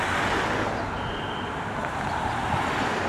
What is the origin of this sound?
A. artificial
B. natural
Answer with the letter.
B